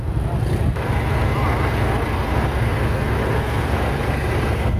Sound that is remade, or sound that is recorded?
recorded